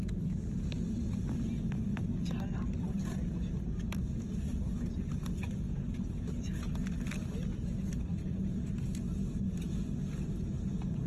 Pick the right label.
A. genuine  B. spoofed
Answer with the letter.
A